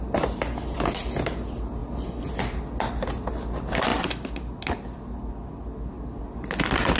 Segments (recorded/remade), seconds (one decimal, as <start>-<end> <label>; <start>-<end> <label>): 0.0-7.0 recorded